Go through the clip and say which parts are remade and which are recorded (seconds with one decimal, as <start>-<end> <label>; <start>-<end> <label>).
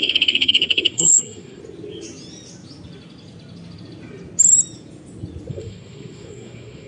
0.0-1.6 remade; 1.6-5.5 recorded; 5.5-6.9 remade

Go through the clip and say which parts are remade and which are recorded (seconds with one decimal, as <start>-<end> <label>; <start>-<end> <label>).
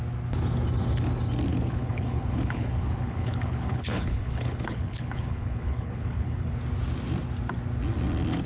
0.0-1.5 recorded; 1.5-6.5 remade; 6.5-8.5 recorded